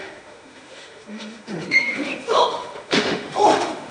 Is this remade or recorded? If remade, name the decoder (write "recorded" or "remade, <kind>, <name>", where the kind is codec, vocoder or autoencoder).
remade, autoencoder, DAC-VAE